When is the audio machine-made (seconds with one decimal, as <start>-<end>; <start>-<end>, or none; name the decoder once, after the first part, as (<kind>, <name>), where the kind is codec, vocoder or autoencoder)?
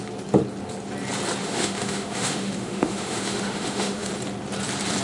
1.4-4.1 (autoencoder, DAC-VAE)